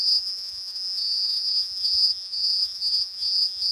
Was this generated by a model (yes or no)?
yes